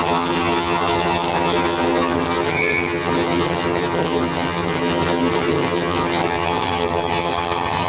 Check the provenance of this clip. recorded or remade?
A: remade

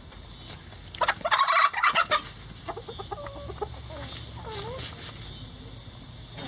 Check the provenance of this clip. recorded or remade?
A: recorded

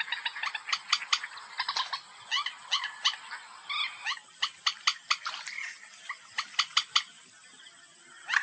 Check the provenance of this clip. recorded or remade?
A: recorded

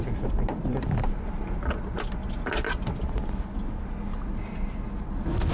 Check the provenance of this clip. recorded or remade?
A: recorded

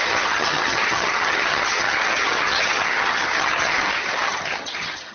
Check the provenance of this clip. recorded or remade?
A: remade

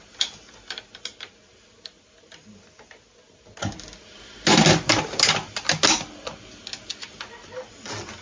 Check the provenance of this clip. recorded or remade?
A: recorded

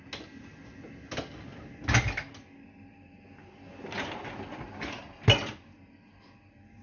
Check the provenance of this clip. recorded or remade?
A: recorded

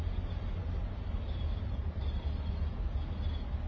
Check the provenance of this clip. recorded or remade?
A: recorded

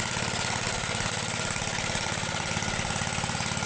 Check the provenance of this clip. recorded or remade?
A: recorded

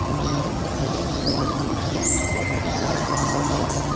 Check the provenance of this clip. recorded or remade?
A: remade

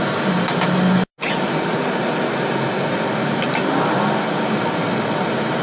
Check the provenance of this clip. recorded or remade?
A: recorded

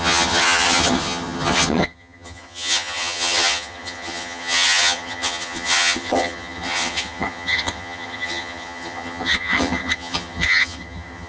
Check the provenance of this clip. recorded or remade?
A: remade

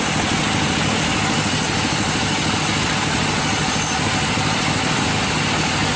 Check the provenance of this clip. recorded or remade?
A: recorded